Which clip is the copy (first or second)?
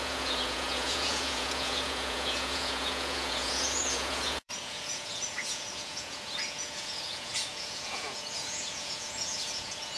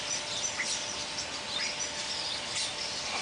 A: first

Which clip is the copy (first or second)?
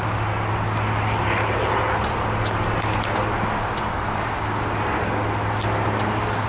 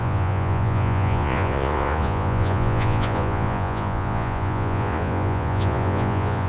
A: second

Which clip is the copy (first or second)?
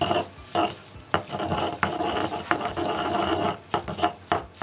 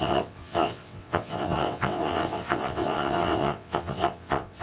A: second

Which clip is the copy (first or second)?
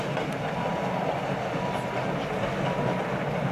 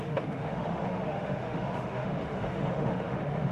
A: second